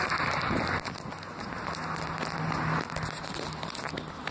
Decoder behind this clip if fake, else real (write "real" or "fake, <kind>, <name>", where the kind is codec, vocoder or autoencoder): real